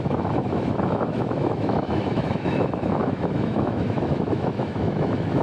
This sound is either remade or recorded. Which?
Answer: remade